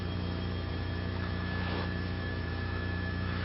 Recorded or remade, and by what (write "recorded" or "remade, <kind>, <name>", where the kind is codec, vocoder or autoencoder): remade, autoencoder, DAC-VAE